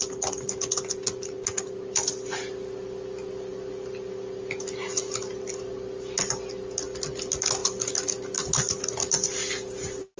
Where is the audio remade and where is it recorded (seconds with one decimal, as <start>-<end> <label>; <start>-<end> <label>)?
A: 0.0-10.2 recorded

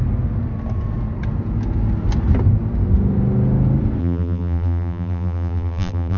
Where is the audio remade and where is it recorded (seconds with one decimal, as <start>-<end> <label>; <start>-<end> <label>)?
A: 0.0-4.0 recorded; 4.0-6.2 remade

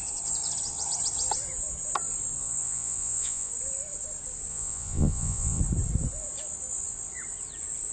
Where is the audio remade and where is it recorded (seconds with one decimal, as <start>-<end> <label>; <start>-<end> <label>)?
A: 0.0-2.4 recorded; 2.4-3.5 remade; 3.5-4.5 recorded; 4.5-5.6 remade; 5.6-7.9 recorded

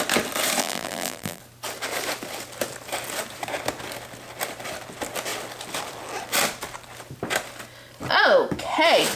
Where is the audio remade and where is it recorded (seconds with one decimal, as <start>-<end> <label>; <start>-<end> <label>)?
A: 0.0-0.6 recorded; 0.6-1.4 remade; 1.4-9.2 recorded

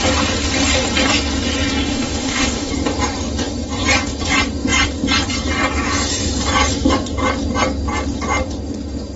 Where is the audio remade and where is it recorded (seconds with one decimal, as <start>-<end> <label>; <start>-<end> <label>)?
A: 0.0-1.9 recorded; 1.9-2.7 remade; 2.7-9.2 recorded

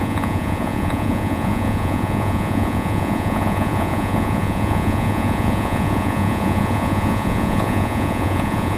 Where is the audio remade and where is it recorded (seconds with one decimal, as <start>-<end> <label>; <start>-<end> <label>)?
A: 0.0-8.8 remade